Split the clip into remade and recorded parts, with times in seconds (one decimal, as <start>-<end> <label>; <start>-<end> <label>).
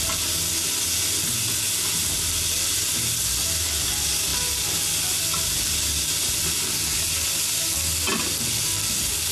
0.0-9.3 recorded